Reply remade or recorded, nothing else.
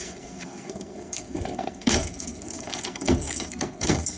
remade